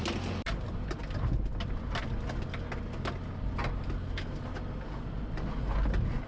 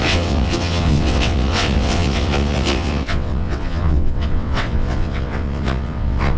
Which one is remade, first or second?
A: second